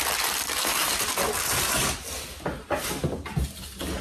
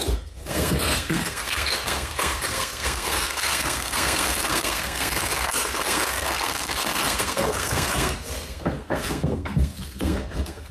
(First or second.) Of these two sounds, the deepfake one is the second